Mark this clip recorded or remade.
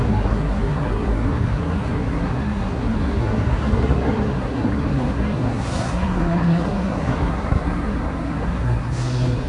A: remade